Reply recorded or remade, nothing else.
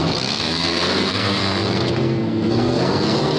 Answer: remade